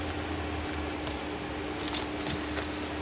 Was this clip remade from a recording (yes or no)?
no